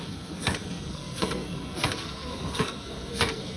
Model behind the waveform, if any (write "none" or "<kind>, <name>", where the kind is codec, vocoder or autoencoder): codec, SNAC